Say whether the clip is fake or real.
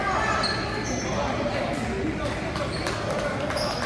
real